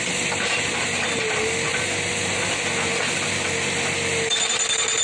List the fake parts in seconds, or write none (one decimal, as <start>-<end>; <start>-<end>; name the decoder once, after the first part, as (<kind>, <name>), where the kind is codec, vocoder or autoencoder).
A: none